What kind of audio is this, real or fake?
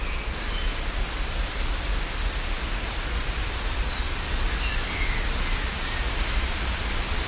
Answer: real